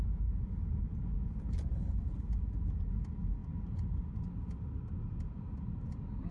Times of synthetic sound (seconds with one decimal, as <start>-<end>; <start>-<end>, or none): none